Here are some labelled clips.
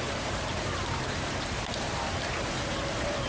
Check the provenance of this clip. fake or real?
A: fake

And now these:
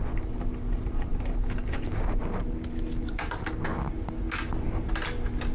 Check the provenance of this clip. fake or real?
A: real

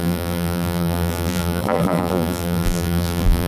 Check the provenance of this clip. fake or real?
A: fake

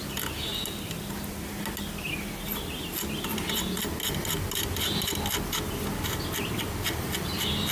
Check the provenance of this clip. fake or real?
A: real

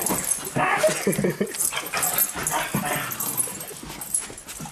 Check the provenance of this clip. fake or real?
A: real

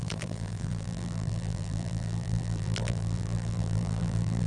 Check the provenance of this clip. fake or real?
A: fake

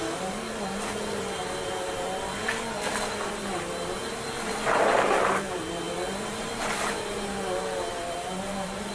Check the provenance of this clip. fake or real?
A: fake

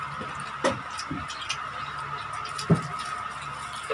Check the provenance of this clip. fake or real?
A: real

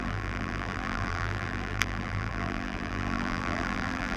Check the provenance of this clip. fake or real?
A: fake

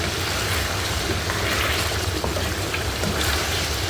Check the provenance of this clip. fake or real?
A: real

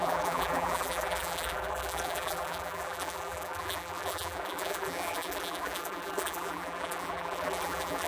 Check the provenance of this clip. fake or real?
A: fake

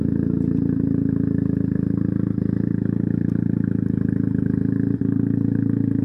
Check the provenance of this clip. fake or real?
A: real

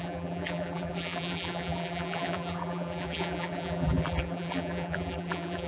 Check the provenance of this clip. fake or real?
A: fake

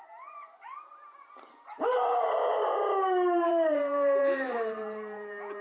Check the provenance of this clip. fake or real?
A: fake